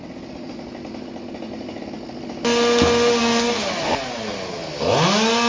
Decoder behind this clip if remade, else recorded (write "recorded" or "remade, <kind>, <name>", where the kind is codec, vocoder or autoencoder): recorded